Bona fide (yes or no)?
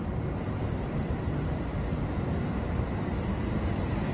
yes